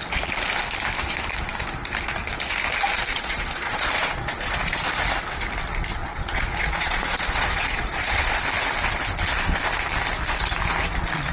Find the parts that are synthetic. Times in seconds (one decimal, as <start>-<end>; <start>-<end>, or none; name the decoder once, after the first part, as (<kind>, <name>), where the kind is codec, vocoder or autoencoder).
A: 3.1-4.8 (vocoder, Vocos); 6.0-8.4